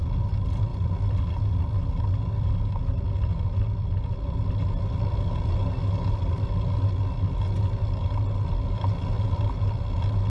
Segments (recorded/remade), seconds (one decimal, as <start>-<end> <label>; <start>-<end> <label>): 0.0-10.3 recorded